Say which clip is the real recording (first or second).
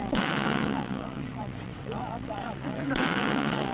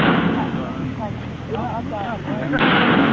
second